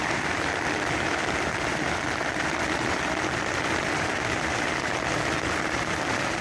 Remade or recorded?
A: recorded